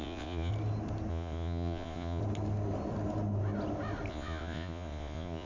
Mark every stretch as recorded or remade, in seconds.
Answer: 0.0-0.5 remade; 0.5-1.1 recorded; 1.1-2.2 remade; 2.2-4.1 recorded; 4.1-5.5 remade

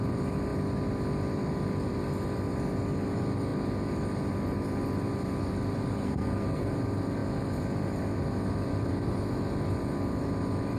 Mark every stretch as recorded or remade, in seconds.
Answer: 0.0-6.0 recorded; 6.0-6.7 remade; 6.7-10.8 recorded

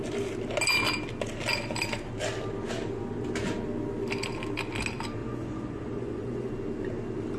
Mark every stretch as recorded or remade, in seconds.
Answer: 0.0-5.2 recorded; 5.2-6.5 remade; 6.5-7.4 recorded

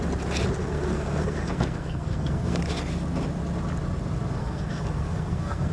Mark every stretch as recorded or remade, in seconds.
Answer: 0.0-0.6 recorded; 0.6-2.6 remade; 2.6-4.4 recorded; 4.4-5.7 remade

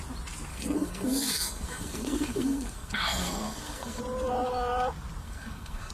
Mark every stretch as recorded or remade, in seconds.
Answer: 0.0-0.5 recorded; 0.5-4.0 remade; 4.0-5.2 recorded; 5.2-5.9 remade

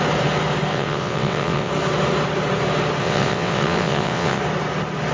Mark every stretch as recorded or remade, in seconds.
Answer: 0.0-0.7 recorded; 0.7-1.7 remade; 1.7-3.0 recorded; 3.0-4.4 remade; 4.4-5.1 recorded